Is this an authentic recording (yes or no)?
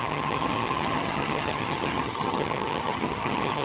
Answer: no